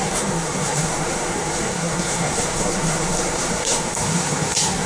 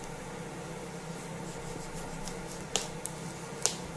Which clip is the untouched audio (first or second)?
second